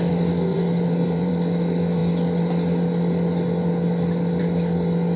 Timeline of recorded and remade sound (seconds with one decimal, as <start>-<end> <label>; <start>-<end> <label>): 0.0-0.5 recorded; 0.5-1.3 remade; 1.3-5.2 recorded